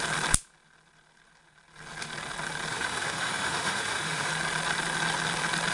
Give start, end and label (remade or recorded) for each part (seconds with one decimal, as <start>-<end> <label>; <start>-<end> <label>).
0.0-2.7 recorded; 2.7-4.3 remade; 4.3-5.7 recorded